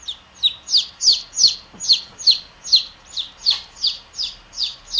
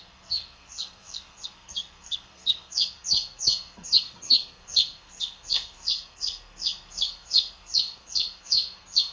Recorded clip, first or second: first